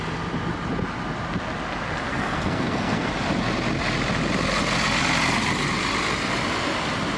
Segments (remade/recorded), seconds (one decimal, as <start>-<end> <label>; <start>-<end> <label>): 0.0-2.1 recorded; 2.1-3.1 remade; 3.1-7.2 recorded